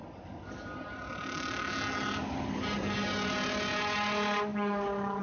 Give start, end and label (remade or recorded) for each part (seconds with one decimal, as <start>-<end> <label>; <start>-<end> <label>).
0.0-5.2 recorded